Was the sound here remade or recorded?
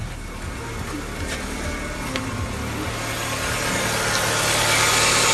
recorded